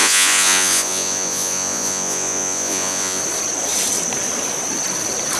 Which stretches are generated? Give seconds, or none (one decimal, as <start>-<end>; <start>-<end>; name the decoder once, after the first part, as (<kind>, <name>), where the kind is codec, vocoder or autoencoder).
0.0-3.2 (vocoder, Vocos)